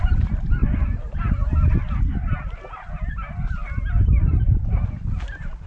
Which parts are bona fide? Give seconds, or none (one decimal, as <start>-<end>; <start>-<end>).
0.6-4.0